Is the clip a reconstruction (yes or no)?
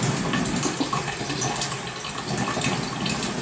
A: no